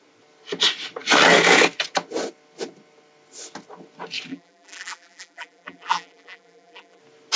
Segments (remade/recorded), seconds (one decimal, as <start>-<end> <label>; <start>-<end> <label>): 0.0-4.3 recorded; 4.3-7.0 remade; 7.0-7.4 recorded